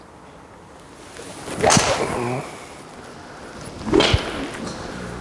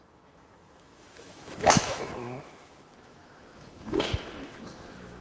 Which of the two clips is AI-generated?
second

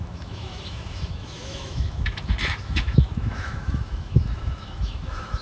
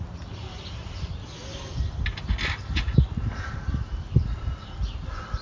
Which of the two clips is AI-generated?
first